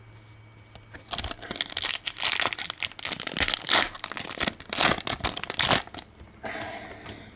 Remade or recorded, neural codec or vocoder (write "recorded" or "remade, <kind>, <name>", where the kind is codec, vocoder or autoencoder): recorded